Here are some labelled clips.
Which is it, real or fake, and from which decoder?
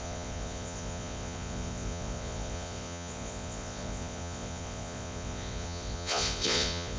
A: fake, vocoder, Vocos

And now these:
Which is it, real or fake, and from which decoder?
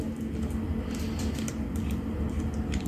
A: real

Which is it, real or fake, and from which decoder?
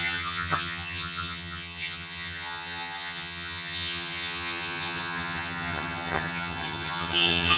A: fake, vocoder, HiFi-GAN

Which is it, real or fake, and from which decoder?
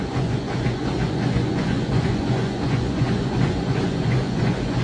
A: fake, vocoder, Vocos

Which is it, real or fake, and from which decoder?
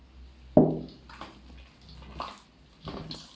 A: real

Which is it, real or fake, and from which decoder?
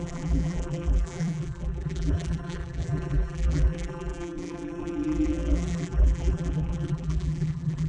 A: fake, vocoder, BigVGAN v2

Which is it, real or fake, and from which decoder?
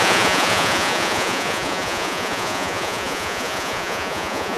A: fake, vocoder, Vocos